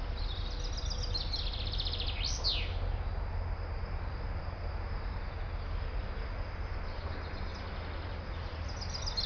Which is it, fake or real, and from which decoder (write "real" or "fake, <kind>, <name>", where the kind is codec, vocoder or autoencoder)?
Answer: real